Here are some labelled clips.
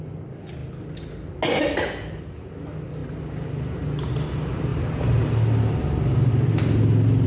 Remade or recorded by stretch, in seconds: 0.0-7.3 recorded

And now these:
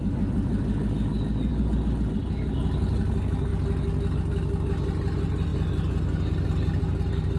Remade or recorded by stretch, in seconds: 0.0-7.4 recorded